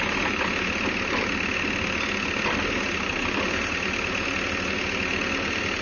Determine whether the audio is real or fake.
real